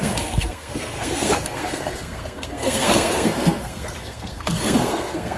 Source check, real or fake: fake